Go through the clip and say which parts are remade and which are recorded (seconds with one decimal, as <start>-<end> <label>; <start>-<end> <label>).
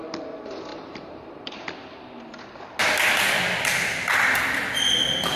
0.0-0.7 recorded; 0.7-1.6 remade; 1.6-5.4 recorded